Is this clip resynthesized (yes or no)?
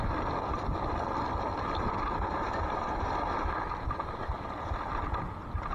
no